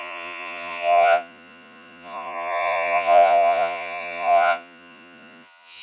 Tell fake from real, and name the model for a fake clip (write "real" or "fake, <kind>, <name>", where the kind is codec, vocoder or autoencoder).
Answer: fake, vocoder, Vocos